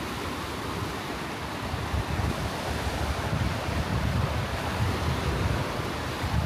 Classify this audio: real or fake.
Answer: fake